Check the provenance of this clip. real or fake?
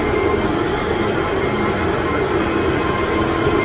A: real